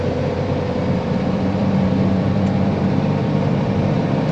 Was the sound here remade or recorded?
remade